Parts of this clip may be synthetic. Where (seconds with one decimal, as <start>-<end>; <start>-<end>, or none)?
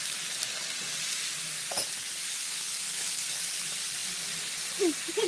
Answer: 2.3-3.4